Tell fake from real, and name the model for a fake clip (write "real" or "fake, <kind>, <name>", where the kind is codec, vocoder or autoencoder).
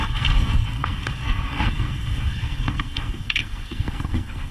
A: fake, codec, SNAC